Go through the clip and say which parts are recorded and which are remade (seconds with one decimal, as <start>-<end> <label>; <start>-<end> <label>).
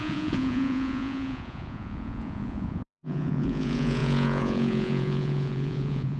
0.0-6.2 remade